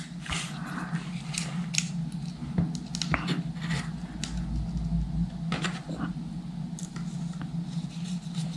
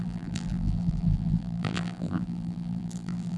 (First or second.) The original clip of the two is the first